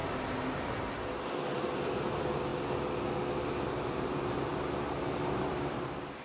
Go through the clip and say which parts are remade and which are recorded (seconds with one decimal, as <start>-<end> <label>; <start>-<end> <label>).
0.0-1.2 recorded; 1.2-2.5 remade; 2.5-3.6 recorded; 3.6-4.5 remade; 4.5-5.5 recorded; 5.5-6.2 remade

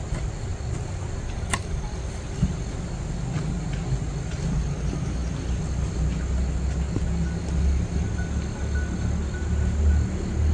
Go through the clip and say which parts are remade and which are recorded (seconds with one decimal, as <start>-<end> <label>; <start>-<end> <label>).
0.0-10.5 recorded

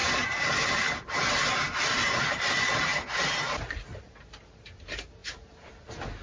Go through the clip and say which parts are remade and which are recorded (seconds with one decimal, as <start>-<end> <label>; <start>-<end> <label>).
0.0-6.2 recorded

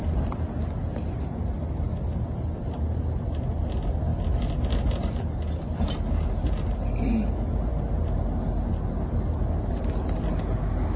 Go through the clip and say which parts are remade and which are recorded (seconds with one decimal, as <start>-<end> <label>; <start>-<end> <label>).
0.0-11.0 recorded

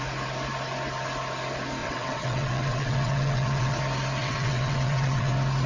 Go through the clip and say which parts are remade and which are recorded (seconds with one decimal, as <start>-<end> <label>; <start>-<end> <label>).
0.0-1.8 recorded; 1.8-3.8 remade; 3.8-4.2 recorded; 4.2-5.3 remade; 5.3-5.7 recorded

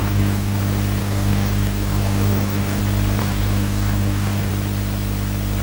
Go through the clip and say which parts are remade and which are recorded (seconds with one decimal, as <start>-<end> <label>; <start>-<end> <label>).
0.0-0.6 remade; 0.6-1.0 recorded; 1.0-2.8 remade; 2.8-3.2 recorded; 3.2-4.5 remade; 4.5-5.6 recorded

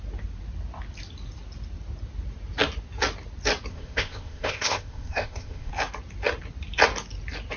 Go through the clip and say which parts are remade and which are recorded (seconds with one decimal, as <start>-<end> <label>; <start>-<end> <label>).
0.0-3.7 recorded; 3.7-5.7 remade; 5.7-7.6 recorded